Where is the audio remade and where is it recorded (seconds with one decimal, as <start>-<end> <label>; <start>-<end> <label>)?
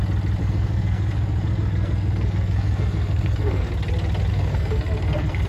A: 0.0-0.4 recorded; 0.4-3.7 remade; 3.7-4.3 recorded; 4.3-5.5 remade